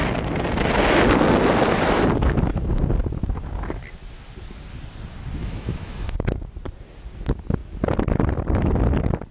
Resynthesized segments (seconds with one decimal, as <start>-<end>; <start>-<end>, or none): 5.4-6.3